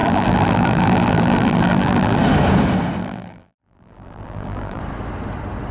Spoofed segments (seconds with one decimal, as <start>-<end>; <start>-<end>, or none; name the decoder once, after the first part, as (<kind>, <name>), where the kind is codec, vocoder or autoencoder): 0.0-2.2 (vocoder, BigVGAN v2); 3.0-4.8